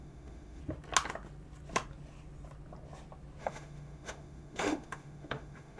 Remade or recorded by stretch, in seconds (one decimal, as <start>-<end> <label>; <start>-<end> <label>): 0.0-0.6 remade; 0.6-3.4 recorded; 3.4-5.8 remade

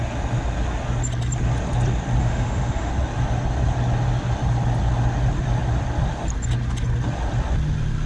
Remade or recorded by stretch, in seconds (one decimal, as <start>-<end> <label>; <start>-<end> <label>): 0.0-2.2 recorded; 2.2-2.9 remade; 2.9-8.1 recorded

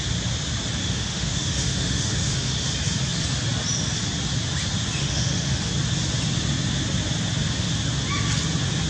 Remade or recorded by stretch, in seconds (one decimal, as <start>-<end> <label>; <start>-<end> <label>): 0.0-0.8 recorded; 0.8-2.7 remade; 2.7-5.0 recorded; 5.0-5.7 remade; 5.7-8.9 recorded

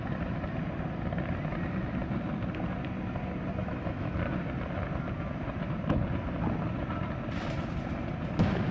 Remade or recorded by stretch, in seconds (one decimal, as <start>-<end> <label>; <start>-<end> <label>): 0.0-3.6 recorded; 3.6-4.2 remade; 4.2-8.7 recorded

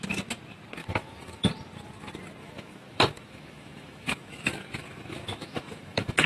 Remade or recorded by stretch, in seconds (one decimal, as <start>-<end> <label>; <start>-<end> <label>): 0.0-0.8 recorded; 0.8-1.5 remade; 1.5-2.4 recorded; 2.4-6.3 remade

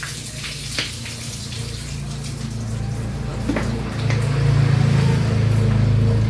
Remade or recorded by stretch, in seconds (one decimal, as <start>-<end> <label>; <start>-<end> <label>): 0.0-6.3 recorded